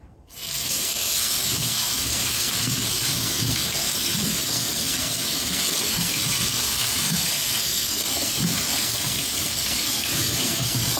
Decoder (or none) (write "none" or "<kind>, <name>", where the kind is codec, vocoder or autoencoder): codec, SNAC